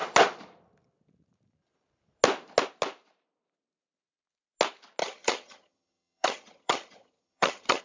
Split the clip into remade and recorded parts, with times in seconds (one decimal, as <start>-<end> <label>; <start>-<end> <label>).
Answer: 0.0-5.0 recorded; 5.0-7.8 remade